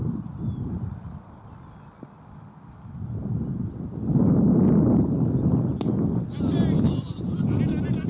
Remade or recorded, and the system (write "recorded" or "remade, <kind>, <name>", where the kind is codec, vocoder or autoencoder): recorded